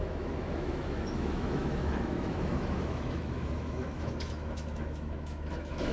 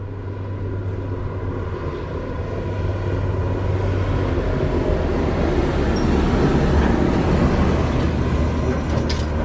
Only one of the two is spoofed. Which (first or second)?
first